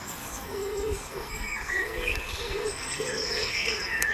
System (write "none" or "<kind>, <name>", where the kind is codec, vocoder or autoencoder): codec, SNAC